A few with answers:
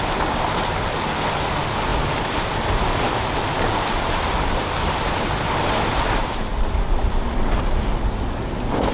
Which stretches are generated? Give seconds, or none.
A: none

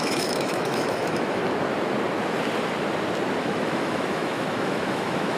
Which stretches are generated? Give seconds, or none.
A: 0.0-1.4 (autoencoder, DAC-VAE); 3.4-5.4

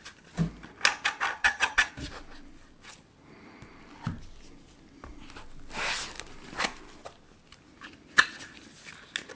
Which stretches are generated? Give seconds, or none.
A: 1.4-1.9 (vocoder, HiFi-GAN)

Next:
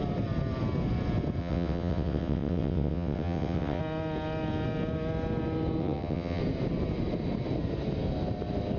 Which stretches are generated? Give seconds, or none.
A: 1.4-3.8 (vocoder, WaveNeXt); 5.8-6.4

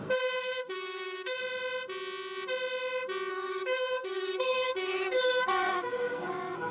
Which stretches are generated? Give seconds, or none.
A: 0.0-1.4 (codec, SNAC); 3.3-6.7

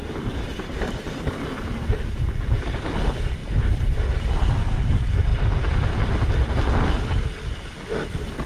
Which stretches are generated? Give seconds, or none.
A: none

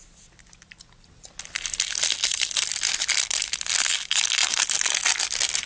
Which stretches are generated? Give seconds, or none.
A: none